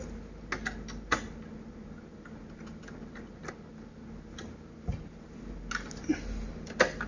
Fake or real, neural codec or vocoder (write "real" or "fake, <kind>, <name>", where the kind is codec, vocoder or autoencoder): real